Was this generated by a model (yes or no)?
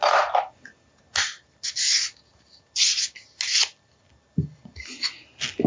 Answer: no